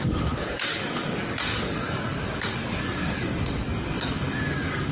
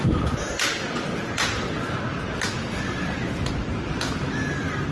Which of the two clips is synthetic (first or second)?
first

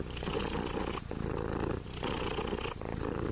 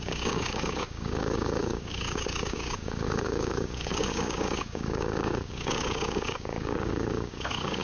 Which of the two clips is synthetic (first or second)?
second